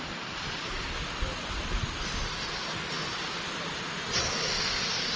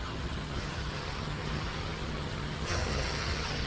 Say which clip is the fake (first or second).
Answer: second